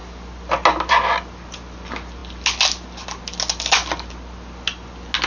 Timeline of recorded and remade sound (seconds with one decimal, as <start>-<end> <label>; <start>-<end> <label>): 0.0-5.3 recorded